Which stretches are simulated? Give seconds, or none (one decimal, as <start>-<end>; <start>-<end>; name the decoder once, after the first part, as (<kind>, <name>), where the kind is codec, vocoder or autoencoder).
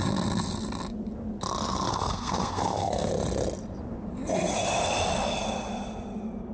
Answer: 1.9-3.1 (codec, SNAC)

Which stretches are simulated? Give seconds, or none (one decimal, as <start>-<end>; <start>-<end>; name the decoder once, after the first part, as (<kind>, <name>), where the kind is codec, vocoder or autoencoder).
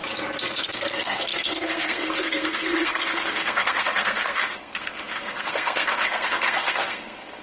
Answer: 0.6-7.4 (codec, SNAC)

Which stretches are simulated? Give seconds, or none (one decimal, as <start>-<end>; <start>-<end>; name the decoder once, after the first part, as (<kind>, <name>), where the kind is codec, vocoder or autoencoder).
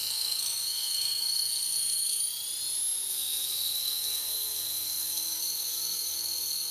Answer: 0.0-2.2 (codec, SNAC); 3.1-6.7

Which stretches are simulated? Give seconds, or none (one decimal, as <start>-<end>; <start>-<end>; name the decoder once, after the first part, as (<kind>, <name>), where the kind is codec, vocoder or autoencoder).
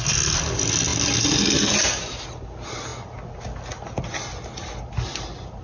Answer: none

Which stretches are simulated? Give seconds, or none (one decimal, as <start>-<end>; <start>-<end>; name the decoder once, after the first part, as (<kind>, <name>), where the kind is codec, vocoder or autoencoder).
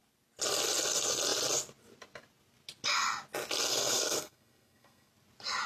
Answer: 3.7-5.1 (codec, SNAC)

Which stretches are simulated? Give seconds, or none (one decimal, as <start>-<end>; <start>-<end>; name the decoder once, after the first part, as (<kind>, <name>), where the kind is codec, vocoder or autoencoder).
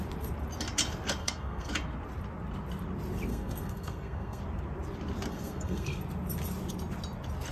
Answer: 1.2-1.7 (codec, SNAC); 3.3-4.4; 5.3-6.0